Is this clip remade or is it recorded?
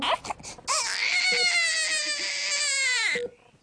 recorded